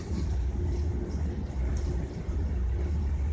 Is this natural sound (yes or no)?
yes